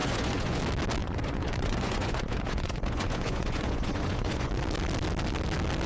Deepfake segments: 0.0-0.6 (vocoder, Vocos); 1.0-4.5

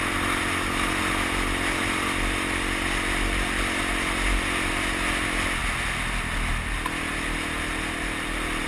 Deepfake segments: none

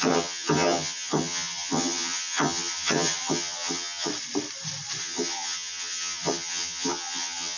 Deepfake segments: 0.0-4.1 (vocoder, HiFi-GAN); 5.0-7.6

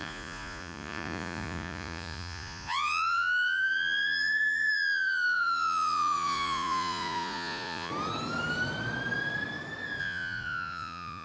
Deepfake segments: 0.0-7.9 (vocoder, Vocos); 10.0-11.2